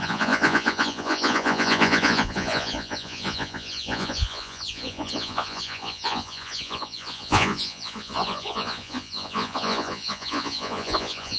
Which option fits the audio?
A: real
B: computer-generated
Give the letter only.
B